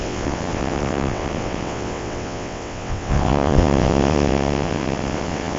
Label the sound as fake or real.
fake